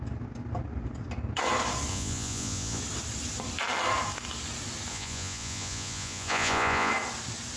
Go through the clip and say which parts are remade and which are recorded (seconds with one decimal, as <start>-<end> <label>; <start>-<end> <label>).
0.0-1.9 recorded; 1.9-2.8 remade; 2.8-4.9 recorded; 4.9-6.9 remade; 6.9-7.6 recorded